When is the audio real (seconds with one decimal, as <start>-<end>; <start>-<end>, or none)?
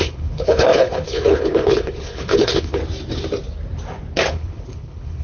2.8-4.3